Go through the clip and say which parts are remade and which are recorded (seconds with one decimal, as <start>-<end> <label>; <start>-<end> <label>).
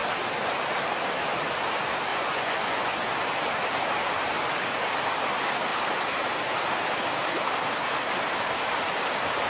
0.0-2.1 recorded; 2.1-2.9 remade; 2.9-9.5 recorded